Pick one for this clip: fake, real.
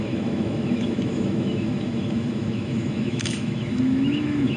fake